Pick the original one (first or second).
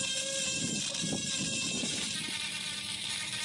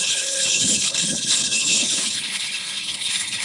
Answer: first